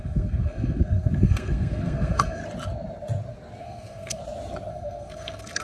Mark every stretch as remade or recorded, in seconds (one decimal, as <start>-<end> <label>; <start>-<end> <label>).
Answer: 0.0-2.4 remade; 2.4-3.6 recorded; 3.6-4.2 remade; 4.2-4.7 recorded; 4.7-5.6 remade